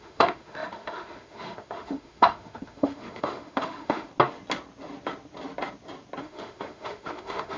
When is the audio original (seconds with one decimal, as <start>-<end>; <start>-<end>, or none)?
4.1-6.2